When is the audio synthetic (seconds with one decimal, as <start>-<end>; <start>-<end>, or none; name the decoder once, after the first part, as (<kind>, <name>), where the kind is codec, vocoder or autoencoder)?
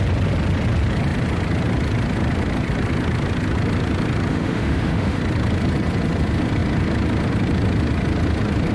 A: 4.3-5.2 (autoencoder, DAC-VAE)